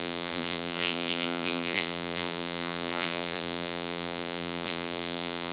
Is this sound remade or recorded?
remade